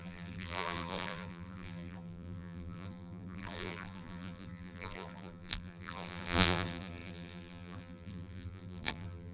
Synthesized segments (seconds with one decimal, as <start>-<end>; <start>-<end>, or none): 0.0-9.3